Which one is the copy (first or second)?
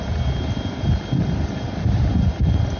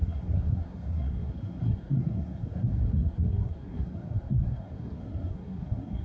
second